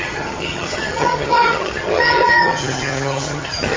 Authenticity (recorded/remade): remade